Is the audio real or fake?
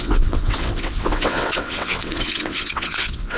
fake